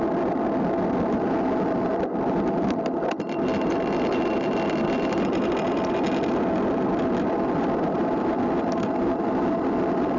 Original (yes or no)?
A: yes